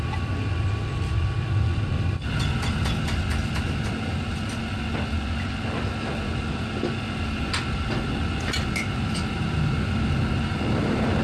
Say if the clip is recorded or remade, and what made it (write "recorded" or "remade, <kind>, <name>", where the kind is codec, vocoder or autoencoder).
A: recorded